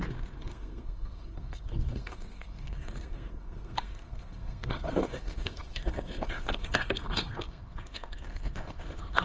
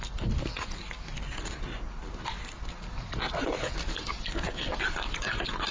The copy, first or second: first